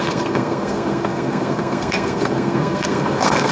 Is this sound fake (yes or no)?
yes